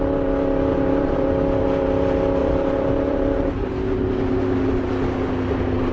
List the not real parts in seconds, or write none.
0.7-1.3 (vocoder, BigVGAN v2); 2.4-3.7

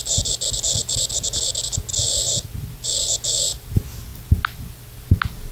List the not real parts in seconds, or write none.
none

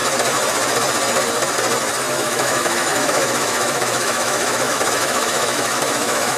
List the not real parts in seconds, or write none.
2.1-6.4 (autoencoder, DAC-VAE)

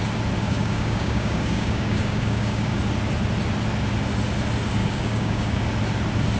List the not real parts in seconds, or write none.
0.4-2.8 (codec, DAC); 4.8-5.7